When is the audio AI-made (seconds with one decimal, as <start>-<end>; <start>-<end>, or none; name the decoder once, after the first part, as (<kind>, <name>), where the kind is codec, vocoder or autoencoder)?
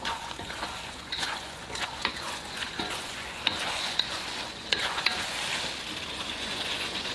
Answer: 0.0-5.5 (vocoder, Vocos); 6.1-7.1